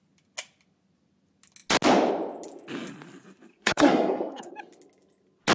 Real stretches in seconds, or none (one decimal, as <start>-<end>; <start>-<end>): 0.0-3.5; 4.5-5.5